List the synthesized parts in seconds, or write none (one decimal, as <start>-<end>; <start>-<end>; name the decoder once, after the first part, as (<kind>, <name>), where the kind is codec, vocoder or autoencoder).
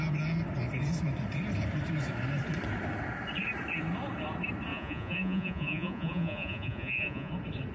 4.7-7.3 (vocoder, Vocos)